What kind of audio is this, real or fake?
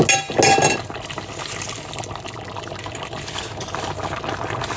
real